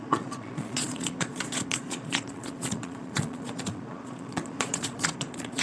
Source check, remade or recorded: remade